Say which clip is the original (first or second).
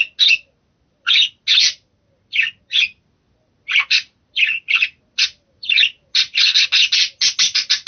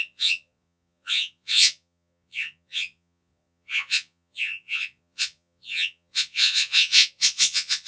first